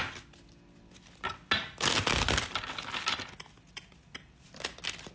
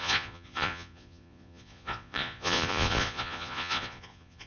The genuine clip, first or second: first